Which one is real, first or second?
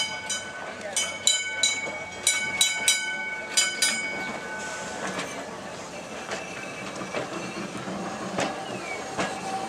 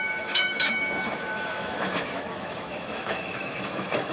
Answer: first